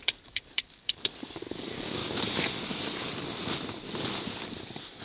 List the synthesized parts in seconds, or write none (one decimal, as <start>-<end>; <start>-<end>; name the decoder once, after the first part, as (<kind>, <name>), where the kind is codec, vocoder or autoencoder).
0.0-2.0 (codec, DAC)